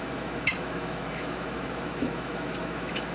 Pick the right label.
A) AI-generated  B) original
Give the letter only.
A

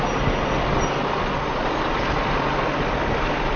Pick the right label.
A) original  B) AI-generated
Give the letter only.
A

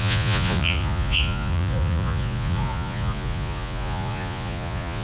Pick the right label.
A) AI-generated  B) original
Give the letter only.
A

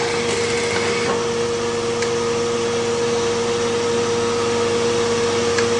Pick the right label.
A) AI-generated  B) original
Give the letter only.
B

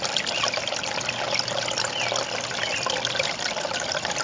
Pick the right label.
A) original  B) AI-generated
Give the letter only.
A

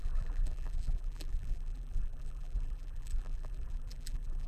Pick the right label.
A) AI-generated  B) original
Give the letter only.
A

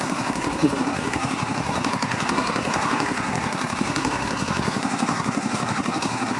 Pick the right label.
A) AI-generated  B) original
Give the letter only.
A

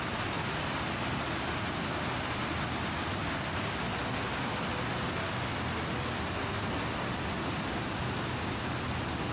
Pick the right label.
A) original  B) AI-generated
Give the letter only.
A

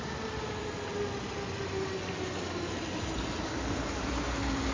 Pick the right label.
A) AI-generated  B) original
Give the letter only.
B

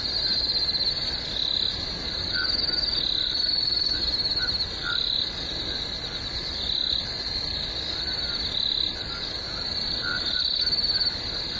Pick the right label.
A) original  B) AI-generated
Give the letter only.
A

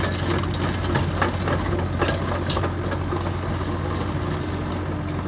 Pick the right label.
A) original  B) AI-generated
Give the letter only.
A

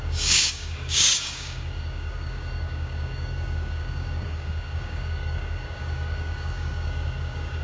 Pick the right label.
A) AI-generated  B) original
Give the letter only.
A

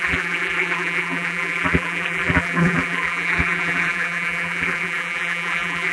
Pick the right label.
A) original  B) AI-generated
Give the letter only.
B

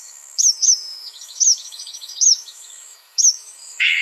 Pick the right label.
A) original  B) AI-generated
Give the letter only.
B